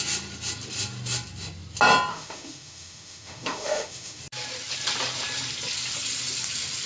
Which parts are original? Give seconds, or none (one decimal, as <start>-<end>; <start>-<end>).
0.0-2.1; 4.2-6.9